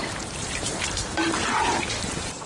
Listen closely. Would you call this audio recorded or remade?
remade